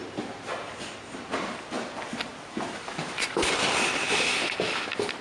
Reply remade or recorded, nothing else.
recorded